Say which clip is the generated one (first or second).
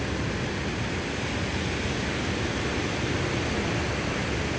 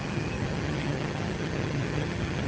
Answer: second